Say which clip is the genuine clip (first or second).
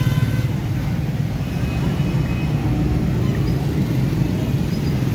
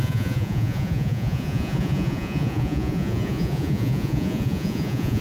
first